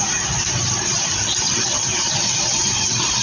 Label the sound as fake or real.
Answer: fake